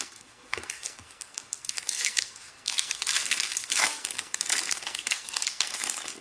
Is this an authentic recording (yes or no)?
no